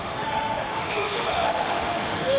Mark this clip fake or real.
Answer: fake